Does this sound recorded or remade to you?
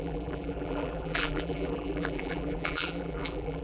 remade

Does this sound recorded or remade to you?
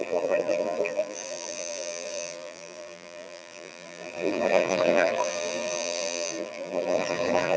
remade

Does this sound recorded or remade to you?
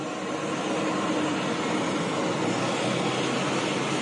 recorded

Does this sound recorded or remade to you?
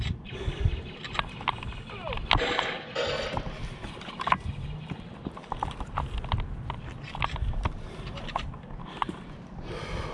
recorded